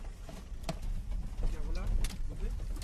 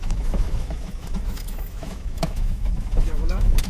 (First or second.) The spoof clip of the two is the second